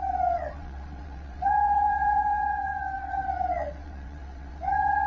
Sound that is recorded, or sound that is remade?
remade